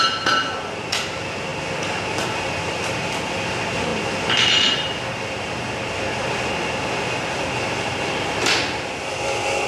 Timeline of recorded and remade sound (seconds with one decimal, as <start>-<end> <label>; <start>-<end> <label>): 0.0-9.7 recorded